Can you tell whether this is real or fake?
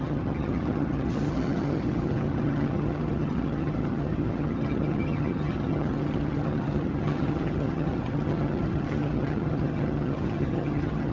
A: fake